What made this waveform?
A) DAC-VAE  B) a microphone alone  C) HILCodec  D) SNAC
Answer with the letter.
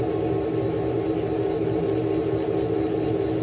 B